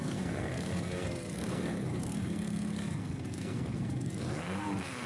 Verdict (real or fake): fake